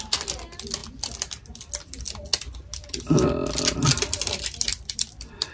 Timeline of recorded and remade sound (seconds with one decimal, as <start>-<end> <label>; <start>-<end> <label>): 0.0-0.8 recorded; 0.8-1.7 remade; 1.7-4.7 recorded; 4.7-5.5 remade